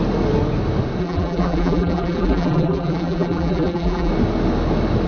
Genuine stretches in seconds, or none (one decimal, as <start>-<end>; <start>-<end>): 0.0-1.0; 4.1-5.1